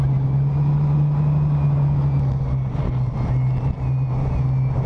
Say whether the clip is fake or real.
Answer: real